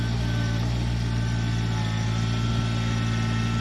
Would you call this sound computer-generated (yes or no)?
no